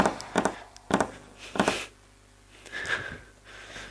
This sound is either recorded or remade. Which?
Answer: recorded